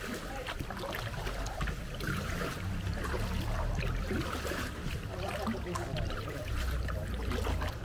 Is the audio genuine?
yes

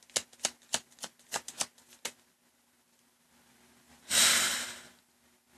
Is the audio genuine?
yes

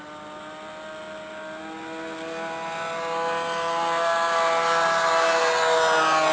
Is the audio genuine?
yes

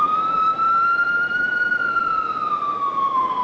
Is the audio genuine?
no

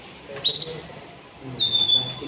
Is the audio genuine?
yes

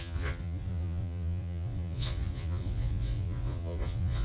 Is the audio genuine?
no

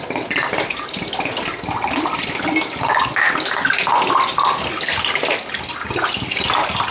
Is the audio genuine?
yes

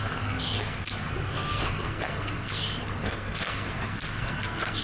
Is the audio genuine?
no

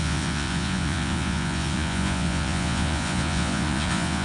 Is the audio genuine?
no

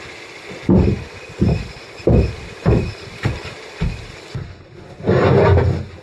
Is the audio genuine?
yes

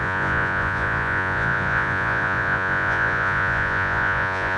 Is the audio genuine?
no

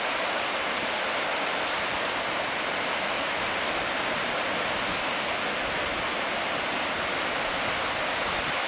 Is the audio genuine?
yes